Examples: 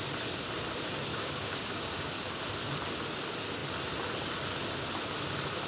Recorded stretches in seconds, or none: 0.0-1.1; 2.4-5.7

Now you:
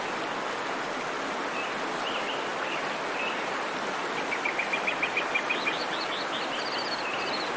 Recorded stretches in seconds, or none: 0.0-7.6

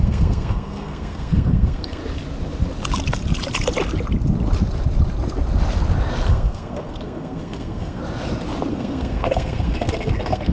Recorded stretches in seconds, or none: 2.0-6.3; 8.0-8.7

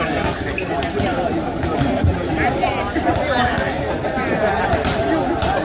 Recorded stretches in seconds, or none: 0.0-1.1; 4.5-5.6

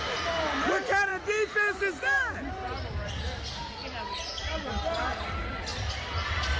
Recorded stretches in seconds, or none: 0.0-6.6

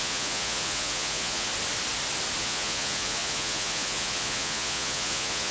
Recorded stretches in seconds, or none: 1.5-2.4

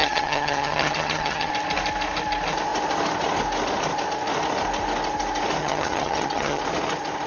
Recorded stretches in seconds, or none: 1.5-5.6; 6.6-7.3

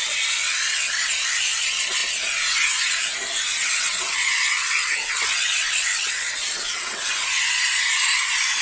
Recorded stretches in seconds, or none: 0.0-0.4; 1.0-3.5; 7.1-8.6